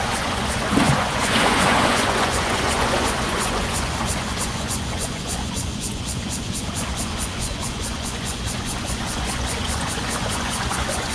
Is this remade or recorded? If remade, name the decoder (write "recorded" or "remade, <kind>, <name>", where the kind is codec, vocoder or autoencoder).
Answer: remade, vocoder, Vocos